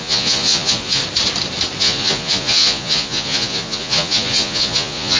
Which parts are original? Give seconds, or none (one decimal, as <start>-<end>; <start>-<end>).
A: 1.0-1.8